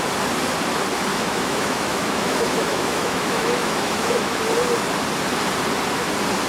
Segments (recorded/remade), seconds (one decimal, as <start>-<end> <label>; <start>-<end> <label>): 0.0-1.1 recorded; 1.1-4.4 remade; 4.4-6.5 recorded